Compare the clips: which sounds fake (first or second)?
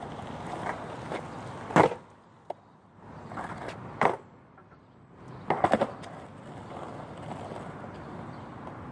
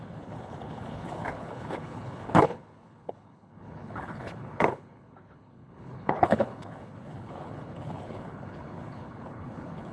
second